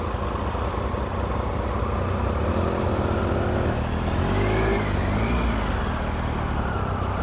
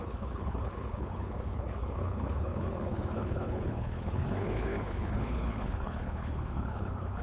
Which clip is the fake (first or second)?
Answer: second